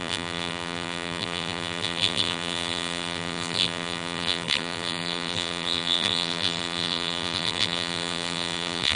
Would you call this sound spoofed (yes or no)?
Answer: yes